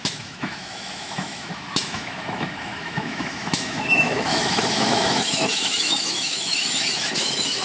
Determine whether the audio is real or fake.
fake